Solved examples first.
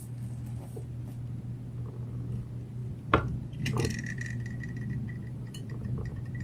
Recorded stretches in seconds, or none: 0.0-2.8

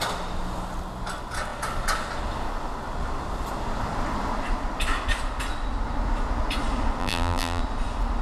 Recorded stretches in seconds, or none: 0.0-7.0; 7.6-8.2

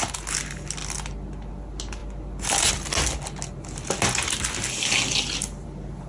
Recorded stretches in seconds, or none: 0.0-6.1

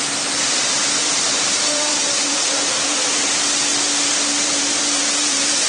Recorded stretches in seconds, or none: 3.7-4.4

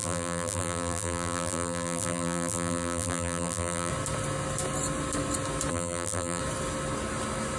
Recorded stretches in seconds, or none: 3.9-5.7; 6.4-7.6

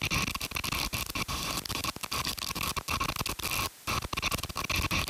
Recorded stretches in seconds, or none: 0.0-5.1